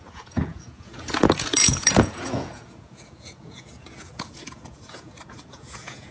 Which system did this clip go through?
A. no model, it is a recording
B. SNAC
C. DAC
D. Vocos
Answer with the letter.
D